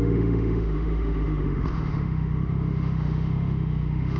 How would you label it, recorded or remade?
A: remade